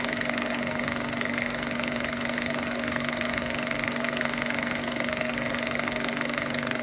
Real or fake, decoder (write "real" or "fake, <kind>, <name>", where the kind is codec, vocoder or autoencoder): fake, codec, SNAC